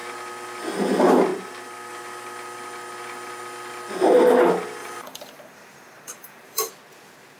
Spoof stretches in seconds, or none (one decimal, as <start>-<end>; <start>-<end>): 4.8-6.7